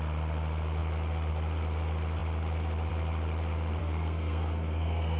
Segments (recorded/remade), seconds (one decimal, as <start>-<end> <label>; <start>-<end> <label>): 0.0-3.8 recorded; 3.8-5.2 remade